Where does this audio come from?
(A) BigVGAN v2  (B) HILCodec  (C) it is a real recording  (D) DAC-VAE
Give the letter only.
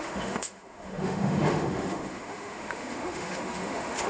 D